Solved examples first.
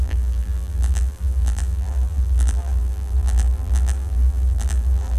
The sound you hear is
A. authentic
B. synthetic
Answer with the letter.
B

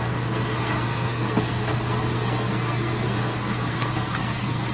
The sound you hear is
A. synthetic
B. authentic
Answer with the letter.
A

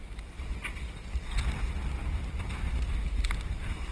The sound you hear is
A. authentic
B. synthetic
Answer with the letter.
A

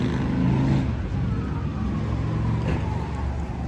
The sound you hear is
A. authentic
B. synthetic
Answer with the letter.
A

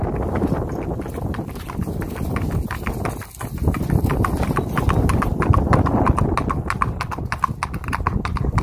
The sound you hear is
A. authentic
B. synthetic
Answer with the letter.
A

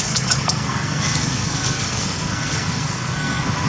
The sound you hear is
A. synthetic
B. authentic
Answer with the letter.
A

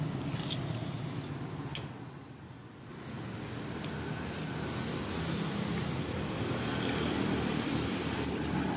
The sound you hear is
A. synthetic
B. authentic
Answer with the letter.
B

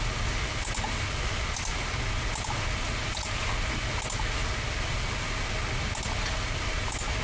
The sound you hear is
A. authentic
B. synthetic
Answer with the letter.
A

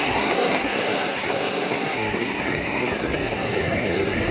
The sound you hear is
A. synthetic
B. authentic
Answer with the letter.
A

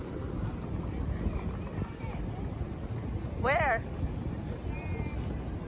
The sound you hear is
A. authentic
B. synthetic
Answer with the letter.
A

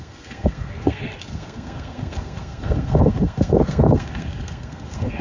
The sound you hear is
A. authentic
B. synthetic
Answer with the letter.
B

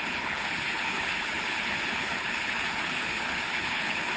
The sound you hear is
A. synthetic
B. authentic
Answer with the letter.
A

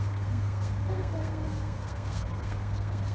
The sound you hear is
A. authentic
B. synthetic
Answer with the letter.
B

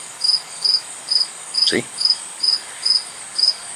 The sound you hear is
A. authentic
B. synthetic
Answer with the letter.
B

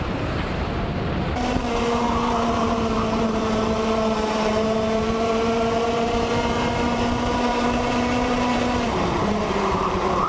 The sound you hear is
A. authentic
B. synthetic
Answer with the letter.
B